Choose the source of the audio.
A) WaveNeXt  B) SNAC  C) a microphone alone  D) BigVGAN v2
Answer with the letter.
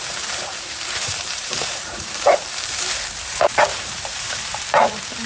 D